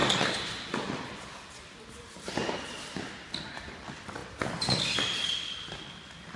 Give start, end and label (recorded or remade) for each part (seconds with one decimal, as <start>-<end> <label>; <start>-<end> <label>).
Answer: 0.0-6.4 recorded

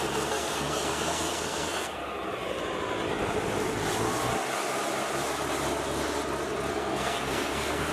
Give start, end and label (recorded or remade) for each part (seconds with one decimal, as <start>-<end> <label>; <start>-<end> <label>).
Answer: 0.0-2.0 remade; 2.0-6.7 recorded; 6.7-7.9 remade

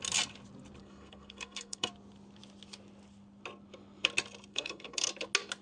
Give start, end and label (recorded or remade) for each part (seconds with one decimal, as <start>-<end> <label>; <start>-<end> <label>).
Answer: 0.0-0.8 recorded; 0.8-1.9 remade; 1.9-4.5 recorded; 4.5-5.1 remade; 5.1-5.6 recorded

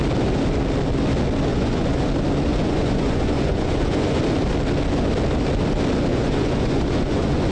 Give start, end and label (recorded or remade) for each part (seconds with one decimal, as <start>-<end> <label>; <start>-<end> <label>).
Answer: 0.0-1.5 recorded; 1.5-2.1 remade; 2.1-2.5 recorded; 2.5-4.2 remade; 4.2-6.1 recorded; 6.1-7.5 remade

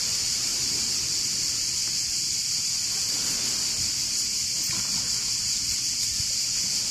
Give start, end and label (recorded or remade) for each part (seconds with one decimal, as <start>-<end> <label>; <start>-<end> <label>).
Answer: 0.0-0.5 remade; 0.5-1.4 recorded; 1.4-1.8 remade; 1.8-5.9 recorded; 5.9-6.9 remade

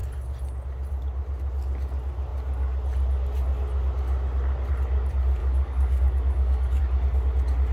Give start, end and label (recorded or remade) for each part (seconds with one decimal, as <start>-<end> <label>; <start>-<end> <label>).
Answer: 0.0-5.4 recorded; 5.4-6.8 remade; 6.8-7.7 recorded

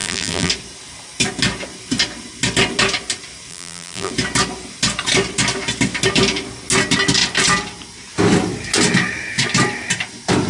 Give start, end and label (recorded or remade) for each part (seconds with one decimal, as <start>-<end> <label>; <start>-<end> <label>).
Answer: 0.0-0.5 remade; 0.5-3.5 recorded; 3.5-4.1 remade; 4.1-10.5 recorded